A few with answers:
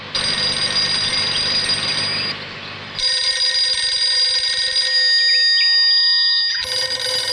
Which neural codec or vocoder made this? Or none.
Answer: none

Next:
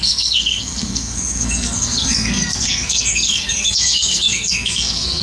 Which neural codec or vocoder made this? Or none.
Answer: codec, SNAC